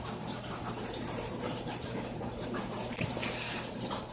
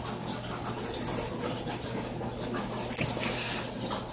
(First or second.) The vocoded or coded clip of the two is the first